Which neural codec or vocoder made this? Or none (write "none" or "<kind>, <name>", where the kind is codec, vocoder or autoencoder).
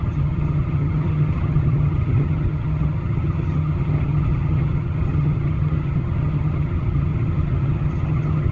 vocoder, HiFi-GAN